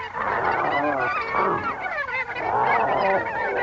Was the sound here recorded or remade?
recorded